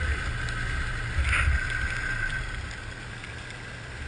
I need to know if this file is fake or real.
real